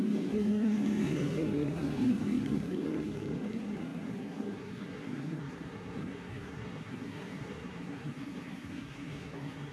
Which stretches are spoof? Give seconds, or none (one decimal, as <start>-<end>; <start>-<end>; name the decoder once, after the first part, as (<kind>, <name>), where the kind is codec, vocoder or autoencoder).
0.0-9.7 (codec, SNAC)